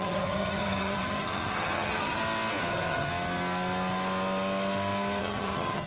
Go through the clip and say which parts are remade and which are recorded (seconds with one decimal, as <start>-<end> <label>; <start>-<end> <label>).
0.0-2.2 remade; 2.2-2.7 recorded; 2.7-3.1 remade; 3.1-5.2 recorded; 5.2-5.9 remade